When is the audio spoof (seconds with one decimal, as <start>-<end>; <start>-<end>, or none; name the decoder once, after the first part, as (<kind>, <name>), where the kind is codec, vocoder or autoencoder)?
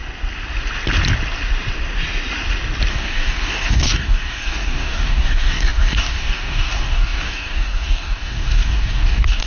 2.9-9.5 (codec, DAC)